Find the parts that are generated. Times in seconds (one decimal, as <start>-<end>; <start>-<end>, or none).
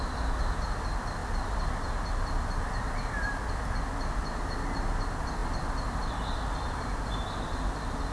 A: none